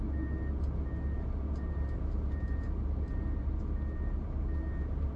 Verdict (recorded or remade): recorded